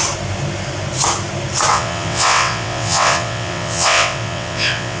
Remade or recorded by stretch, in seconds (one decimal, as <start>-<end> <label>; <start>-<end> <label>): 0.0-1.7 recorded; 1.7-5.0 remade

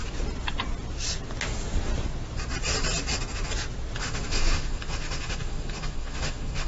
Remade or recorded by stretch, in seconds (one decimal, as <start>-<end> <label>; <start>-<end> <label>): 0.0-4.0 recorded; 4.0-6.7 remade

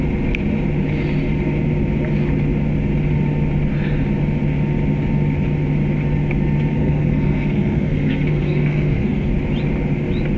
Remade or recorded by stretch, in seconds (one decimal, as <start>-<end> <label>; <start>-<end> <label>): 0.0-6.7 recorded; 6.7-9.3 remade; 9.3-10.4 recorded

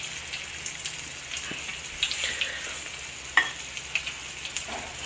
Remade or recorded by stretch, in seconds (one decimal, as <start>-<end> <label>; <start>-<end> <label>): 0.0-5.1 recorded

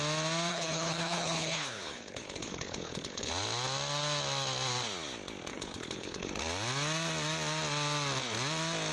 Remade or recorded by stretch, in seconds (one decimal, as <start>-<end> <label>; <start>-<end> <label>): 0.0-0.5 recorded; 0.5-3.3 remade; 3.3-5.5 recorded; 5.5-6.3 remade; 6.3-8.9 recorded

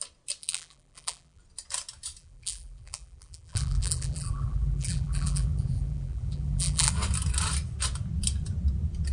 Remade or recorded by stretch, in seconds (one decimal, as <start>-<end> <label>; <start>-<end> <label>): 0.0-0.4 recorded; 0.4-1.4 remade; 1.4-2.2 recorded; 2.2-6.9 remade; 6.9-9.1 recorded